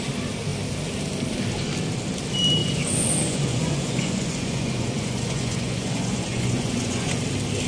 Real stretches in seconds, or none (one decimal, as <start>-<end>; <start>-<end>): 0.0-2.6; 7.2-7.7

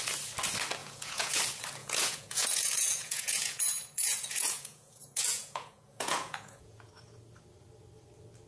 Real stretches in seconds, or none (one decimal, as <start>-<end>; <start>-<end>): 0.0-0.8; 1.4-1.8; 6.9-8.5

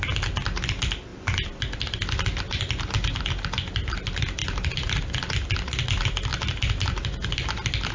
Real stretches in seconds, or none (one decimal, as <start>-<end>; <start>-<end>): 0.0-1.1; 3.3-4.4; 5.0-6.3; 6.8-7.9

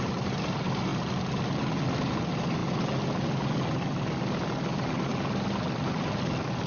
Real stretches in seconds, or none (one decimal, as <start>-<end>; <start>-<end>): 0.0-6.7